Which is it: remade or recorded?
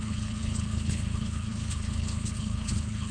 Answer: remade